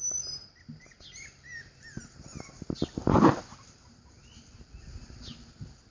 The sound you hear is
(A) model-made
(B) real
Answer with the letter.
B